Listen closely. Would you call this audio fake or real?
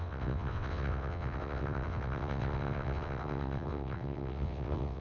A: fake